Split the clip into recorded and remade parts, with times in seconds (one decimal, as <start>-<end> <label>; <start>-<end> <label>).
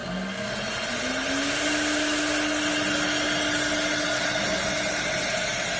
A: 0.0-0.5 remade; 0.5-5.8 recorded